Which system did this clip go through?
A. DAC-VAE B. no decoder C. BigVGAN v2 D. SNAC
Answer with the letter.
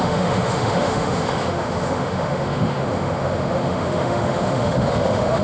A